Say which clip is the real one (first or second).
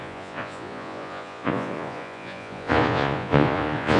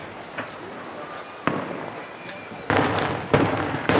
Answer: second